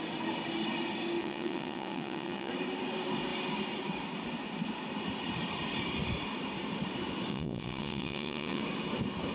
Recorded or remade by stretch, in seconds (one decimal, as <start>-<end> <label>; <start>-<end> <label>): 0.0-1.2 recorded; 1.2-2.5 remade; 2.5-7.3 recorded; 7.3-8.6 remade; 8.6-9.3 recorded